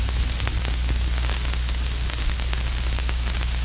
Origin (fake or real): real